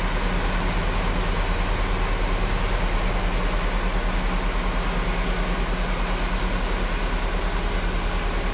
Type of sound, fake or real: real